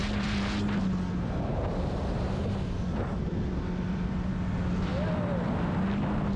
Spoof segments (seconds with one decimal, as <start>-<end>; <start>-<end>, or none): 2.4-4.3